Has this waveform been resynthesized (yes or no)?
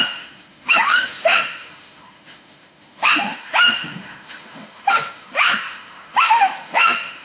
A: yes